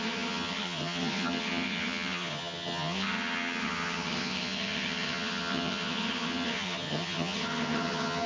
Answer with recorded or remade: remade